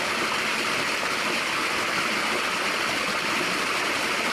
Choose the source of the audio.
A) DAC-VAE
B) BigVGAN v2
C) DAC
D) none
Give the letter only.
D